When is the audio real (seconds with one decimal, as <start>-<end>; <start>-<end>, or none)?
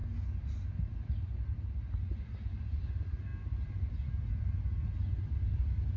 0.0-6.0